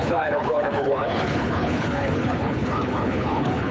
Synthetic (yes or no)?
yes